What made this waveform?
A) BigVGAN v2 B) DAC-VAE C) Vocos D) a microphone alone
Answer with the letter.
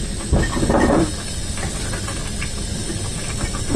D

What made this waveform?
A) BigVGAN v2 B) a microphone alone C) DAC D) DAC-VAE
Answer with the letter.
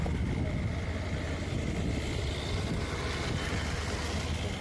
B